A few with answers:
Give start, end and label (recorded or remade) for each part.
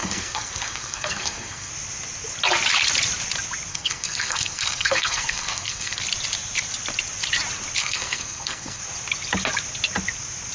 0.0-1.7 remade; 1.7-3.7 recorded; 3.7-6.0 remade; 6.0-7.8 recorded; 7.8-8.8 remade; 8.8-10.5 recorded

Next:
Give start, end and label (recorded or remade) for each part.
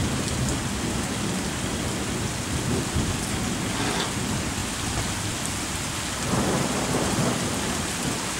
0.0-8.4 recorded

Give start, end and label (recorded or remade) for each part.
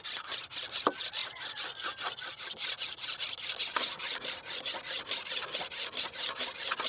0.0-6.9 recorded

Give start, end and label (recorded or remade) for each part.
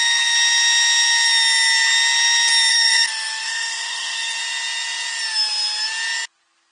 0.0-2.7 recorded; 2.7-4.4 remade; 4.4-6.7 recorded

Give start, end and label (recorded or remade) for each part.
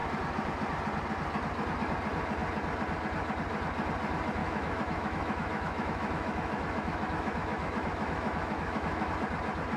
0.0-4.4 recorded; 4.4-9.1 remade; 9.1-9.8 recorded